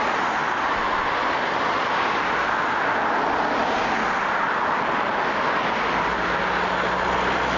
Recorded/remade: recorded